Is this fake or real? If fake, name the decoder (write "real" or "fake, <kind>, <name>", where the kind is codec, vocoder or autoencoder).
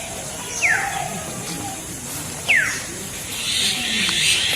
fake, vocoder, BigVGAN v2